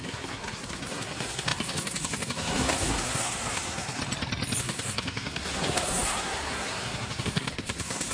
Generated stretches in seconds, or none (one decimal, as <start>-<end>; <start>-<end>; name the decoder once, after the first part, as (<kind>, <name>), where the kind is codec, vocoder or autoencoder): 0.0-4.0 (codec, SNAC); 4.6-8.1